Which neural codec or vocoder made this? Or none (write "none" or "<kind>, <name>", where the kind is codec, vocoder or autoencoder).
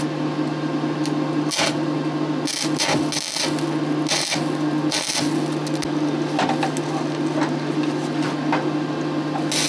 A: none